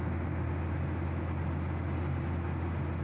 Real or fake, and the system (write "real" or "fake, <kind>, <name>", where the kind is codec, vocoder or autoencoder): real